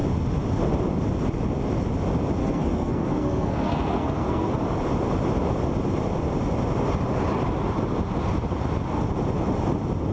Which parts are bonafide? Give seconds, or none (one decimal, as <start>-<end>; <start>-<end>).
0.0-2.4; 4.5-10.1